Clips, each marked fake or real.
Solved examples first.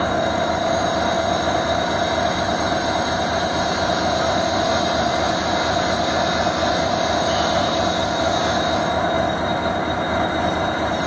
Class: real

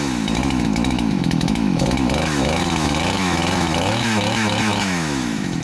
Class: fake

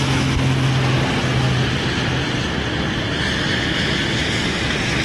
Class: real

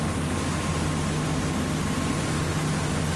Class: real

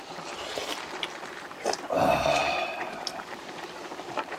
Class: fake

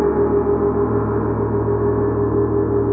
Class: real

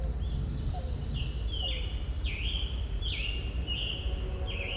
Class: real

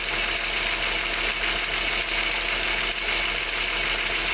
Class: real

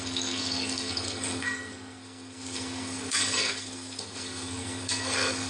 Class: fake